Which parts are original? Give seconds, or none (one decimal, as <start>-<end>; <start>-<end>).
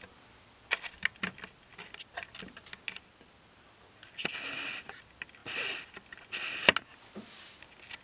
0.0-8.0